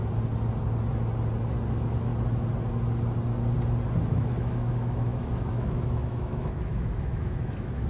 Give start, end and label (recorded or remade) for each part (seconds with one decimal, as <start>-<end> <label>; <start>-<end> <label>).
0.0-1.7 recorded; 1.7-2.1 remade; 2.1-4.1 recorded; 4.1-7.9 remade